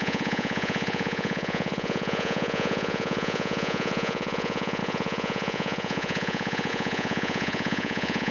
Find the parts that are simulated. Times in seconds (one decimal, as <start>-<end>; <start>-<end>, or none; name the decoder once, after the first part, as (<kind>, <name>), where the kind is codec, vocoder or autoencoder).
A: 0.0-8.3 (vocoder, Vocos)